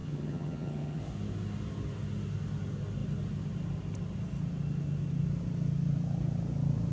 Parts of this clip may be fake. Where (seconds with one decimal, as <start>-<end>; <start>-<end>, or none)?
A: 0.0-1.0